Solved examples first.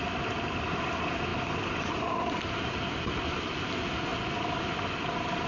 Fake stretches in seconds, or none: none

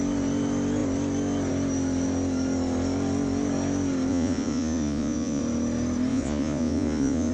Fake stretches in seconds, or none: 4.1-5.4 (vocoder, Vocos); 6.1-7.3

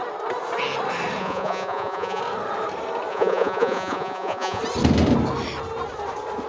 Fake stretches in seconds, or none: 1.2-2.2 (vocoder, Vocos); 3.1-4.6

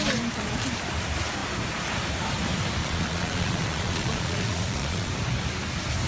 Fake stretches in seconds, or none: 2.8-5.1 (vocoder, Vocos)

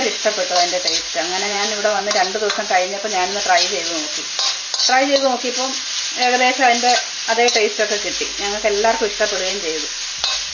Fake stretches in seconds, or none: 1.3-2.0 (vocoder, Vocos)

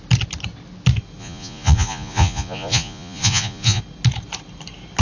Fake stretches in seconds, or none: 1.2-3.8 (vocoder, Vocos)

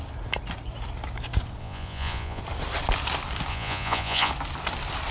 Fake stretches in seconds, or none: 1.6-2.4 (vocoder, Vocos); 3.5-4.3

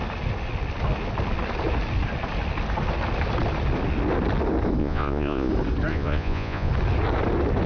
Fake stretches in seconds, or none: 4.8-5.5 (vocoder, Vocos); 5.9-6.7